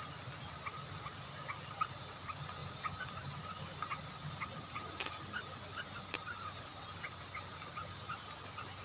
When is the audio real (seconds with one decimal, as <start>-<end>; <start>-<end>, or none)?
0.0-8.8